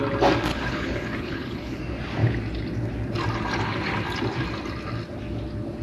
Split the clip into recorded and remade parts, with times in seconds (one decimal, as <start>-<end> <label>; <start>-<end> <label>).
0.0-0.5 recorded; 0.5-1.8 remade; 1.8-5.8 recorded